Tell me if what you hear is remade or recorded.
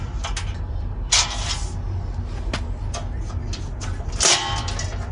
recorded